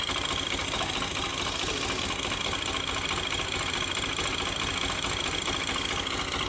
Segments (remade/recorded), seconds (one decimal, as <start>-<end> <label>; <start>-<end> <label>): 0.0-6.5 recorded